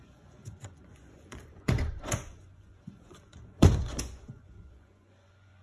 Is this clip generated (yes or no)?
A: yes